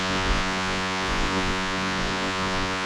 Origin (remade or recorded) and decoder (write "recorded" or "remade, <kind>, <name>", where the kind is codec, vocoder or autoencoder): remade, vocoder, Vocos